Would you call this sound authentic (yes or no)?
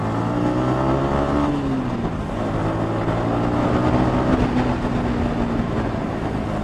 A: yes